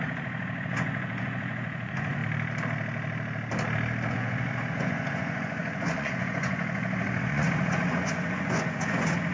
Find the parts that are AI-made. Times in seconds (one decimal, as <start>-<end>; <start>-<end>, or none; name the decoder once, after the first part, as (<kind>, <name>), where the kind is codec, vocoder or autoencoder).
0.0-2.2 (vocoder, Vocos); 4.1-9.3